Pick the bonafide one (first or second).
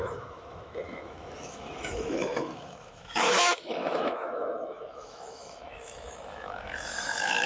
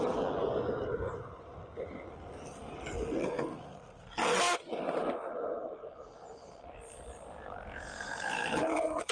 second